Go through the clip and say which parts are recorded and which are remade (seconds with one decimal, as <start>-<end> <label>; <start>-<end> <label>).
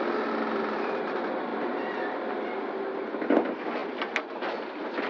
0.0-5.1 recorded